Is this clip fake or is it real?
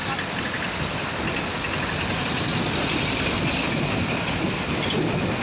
real